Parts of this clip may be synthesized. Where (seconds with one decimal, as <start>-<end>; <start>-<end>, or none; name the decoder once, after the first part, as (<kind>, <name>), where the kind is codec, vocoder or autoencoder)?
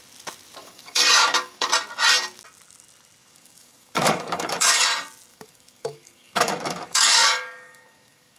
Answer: 0.6-1.7 (codec, DAC); 3.2-4.8; 5.3-8.4